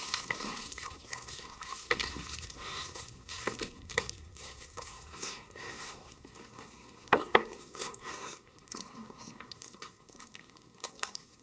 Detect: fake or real fake